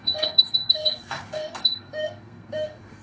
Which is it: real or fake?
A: fake